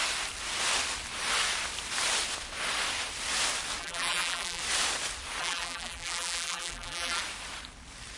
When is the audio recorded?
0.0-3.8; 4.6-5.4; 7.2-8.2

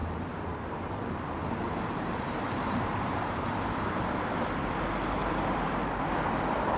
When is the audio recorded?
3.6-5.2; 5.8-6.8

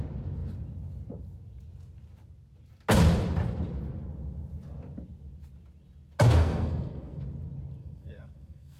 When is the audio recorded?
0.0-6.4; 7.2-7.8

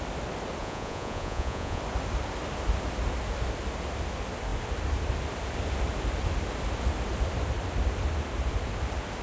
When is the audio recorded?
0.0-0.6; 1.8-9.2

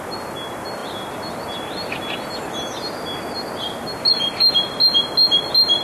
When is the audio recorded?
0.0-5.8

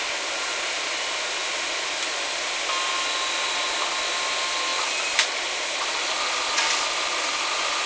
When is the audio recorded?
0.0-7.9

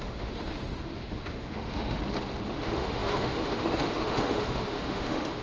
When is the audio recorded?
2.0-2.5